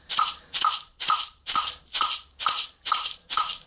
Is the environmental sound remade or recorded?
remade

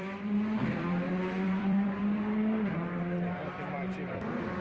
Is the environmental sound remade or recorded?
remade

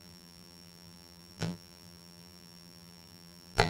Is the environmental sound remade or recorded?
remade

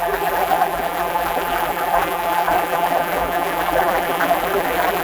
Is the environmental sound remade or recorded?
remade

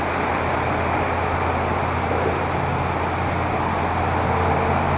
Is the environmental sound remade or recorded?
recorded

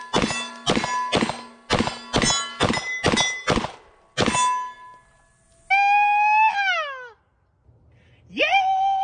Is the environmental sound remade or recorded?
recorded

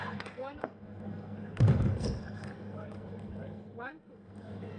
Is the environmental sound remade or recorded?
remade